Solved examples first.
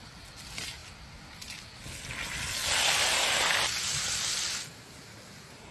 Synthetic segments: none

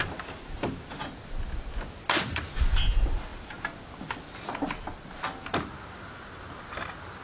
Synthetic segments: none

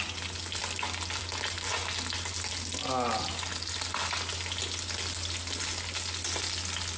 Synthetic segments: none

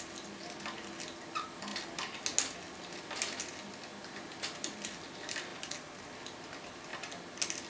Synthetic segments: none

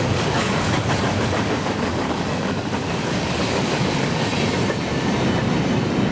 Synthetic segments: 0.0-4.3 (codec, DAC)

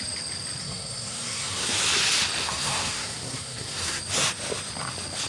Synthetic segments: 0.6-1.7 (codec, SNAC); 2.4-4.0